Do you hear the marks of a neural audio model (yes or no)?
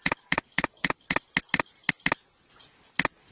no